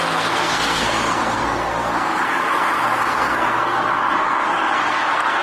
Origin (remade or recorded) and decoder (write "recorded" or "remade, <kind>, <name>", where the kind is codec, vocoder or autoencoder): remade, codec, SNAC